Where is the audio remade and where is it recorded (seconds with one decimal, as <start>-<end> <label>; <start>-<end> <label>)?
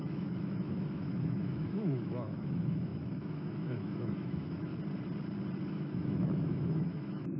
0.0-4.7 remade; 4.7-5.7 recorded; 5.7-7.4 remade